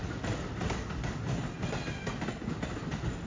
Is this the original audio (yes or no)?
yes